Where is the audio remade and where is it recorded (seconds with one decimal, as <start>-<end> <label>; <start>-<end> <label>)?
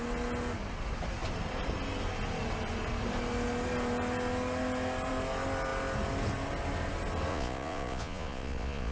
0.0-7.3 recorded; 7.3-8.9 remade